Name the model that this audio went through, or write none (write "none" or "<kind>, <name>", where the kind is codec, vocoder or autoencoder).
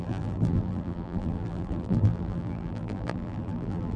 vocoder, BigVGAN v2